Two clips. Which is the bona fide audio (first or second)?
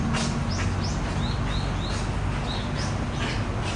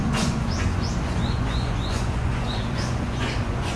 first